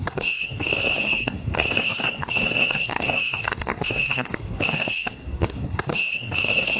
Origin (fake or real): fake